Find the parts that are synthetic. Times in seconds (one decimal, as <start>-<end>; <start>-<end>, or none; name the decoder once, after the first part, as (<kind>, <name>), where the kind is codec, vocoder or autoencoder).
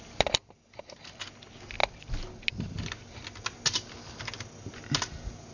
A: none